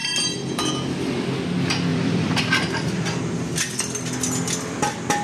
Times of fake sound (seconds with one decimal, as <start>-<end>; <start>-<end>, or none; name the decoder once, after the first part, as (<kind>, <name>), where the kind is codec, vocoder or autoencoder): 0.0-0.7 (vocoder, BigVGAN v2); 1.9-2.4